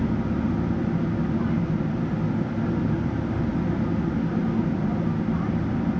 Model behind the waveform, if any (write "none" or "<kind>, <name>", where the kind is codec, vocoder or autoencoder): none